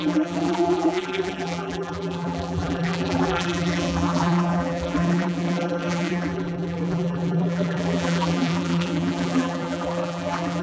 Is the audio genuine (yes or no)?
no